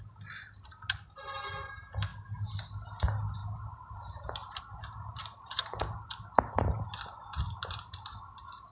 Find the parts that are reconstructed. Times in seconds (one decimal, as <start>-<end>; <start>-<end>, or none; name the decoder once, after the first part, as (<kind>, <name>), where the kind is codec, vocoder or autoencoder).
3.4-4.6 (vocoder, BigVGAN v2)